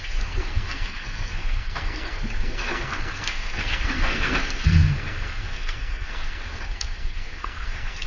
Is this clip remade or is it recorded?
remade